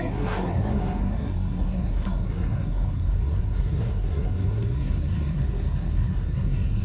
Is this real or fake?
fake